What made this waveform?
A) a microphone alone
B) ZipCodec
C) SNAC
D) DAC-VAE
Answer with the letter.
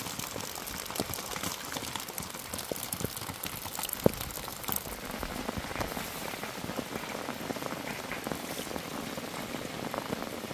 A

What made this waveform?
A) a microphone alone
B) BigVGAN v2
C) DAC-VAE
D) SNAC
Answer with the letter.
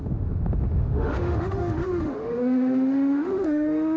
C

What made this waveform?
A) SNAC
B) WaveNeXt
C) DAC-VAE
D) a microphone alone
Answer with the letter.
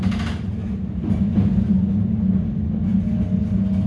D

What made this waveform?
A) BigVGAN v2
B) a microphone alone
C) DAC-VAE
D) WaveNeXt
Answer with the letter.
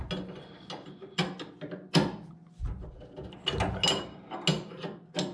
B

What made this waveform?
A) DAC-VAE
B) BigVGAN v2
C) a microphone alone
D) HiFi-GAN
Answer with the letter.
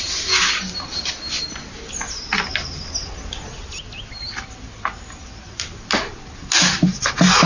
C